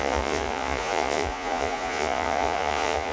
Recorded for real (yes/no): no